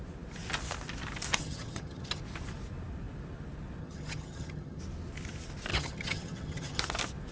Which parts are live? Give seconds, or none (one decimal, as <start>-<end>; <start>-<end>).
0.0-1.4; 2.2-3.8; 4.8-5.7; 6.8-7.3